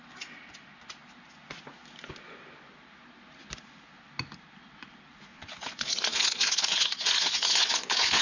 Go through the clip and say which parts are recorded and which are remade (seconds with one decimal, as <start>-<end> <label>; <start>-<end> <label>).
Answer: 0.0-5.3 recorded; 5.3-8.2 remade